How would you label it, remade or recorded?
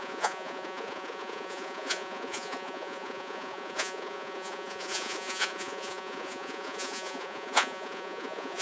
remade